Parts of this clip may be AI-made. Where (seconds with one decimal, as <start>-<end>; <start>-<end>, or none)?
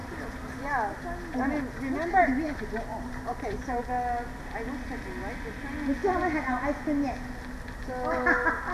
0.0-0.7; 2.9-3.8